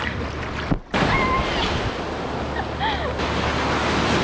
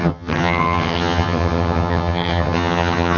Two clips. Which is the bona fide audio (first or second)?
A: first